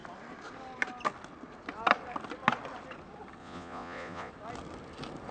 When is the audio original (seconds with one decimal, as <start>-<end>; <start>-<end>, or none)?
0.0-3.4; 4.3-5.3